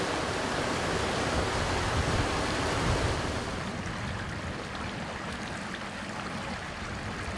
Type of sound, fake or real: real